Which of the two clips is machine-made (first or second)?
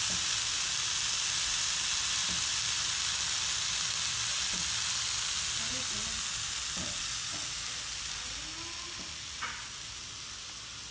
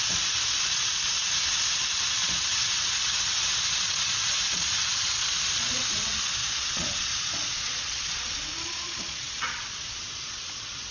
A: second